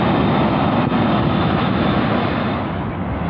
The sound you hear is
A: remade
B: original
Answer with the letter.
B